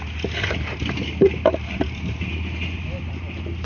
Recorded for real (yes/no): yes